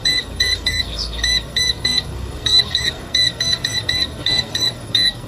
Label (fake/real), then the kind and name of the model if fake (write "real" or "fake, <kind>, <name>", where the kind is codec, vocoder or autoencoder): fake, codec, SNAC